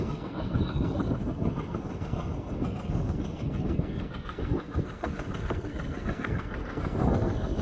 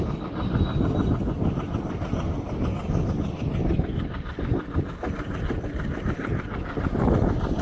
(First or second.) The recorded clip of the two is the second